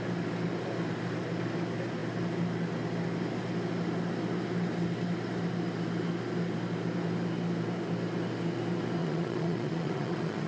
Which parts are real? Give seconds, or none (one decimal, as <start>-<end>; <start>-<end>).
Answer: 0.0-9.0